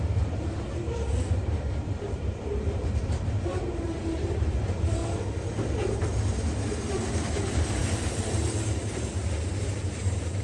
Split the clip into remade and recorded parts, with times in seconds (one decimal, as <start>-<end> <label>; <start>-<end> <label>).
0.0-5.0 remade; 5.0-6.8 recorded; 6.8-10.4 remade